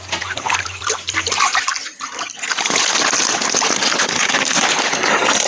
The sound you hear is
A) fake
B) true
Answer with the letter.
B